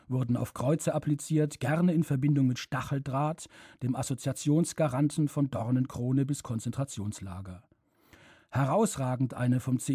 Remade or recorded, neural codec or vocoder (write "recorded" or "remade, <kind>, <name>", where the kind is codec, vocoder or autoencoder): recorded